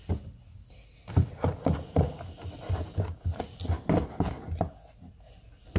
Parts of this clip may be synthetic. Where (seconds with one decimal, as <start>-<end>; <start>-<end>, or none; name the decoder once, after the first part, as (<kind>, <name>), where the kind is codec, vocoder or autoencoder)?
none

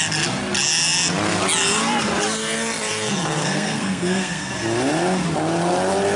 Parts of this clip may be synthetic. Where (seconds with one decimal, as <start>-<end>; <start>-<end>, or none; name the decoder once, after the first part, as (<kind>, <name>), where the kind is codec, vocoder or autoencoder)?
3.4-4.5 (codec, SNAC)